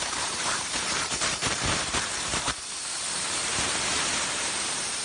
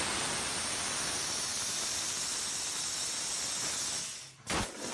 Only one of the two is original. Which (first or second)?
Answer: second